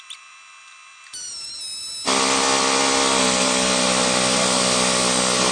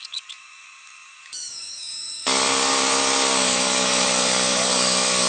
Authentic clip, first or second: first